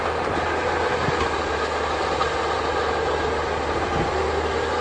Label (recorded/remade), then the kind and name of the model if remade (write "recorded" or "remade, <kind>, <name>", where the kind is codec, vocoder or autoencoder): recorded